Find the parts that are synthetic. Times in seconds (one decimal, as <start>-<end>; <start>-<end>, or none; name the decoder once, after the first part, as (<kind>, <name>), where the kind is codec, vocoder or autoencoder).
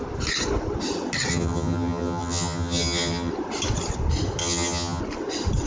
1.3-3.3 (vocoder, HiFi-GAN); 4.4-5.0